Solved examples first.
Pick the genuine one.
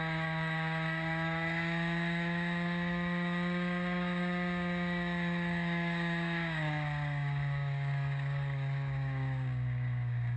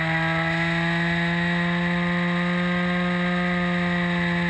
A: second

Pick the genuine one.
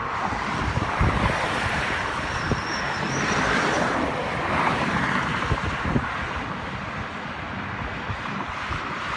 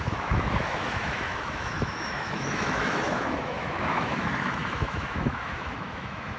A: first